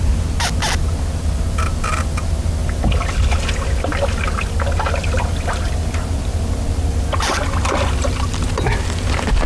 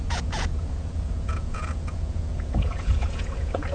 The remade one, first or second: second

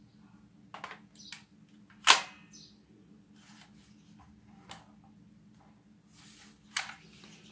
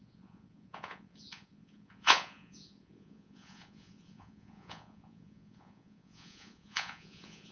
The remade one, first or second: second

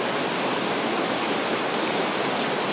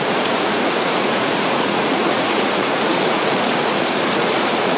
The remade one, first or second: second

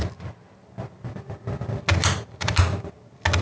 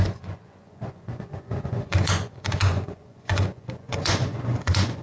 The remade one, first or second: second